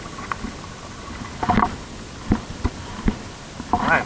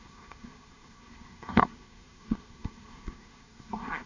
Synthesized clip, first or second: second